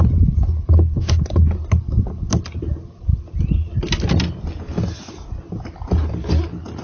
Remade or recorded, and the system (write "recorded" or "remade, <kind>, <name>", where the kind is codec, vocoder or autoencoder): recorded